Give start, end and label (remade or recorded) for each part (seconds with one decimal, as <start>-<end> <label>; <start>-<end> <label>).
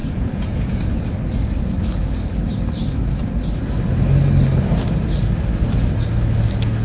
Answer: 0.0-0.9 remade; 0.9-6.8 recorded